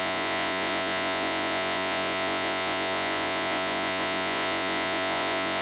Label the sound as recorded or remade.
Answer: remade